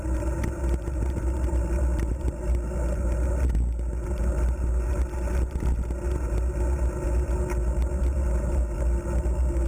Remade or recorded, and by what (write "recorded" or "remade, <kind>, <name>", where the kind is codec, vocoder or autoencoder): recorded